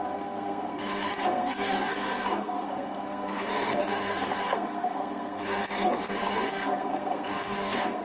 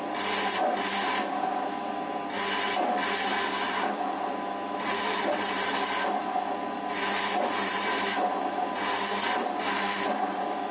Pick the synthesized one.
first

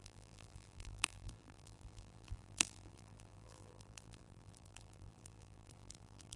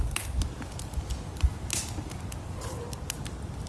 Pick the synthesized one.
first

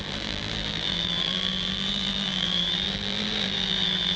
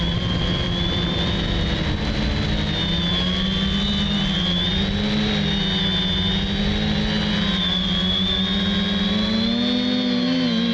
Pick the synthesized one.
first